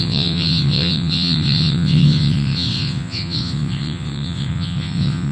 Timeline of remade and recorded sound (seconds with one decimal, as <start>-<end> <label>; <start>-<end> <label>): 0.0-5.3 remade